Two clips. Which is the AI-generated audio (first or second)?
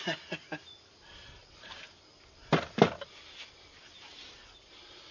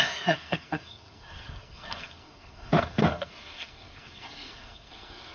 second